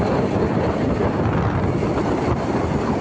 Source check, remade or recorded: recorded